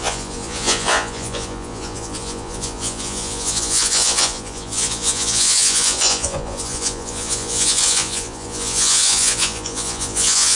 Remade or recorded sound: remade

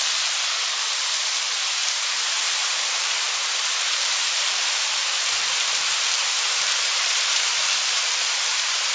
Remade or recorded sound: remade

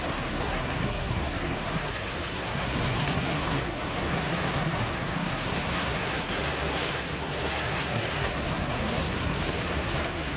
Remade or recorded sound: remade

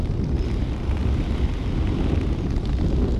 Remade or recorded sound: recorded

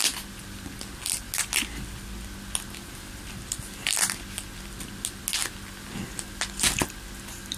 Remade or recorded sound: recorded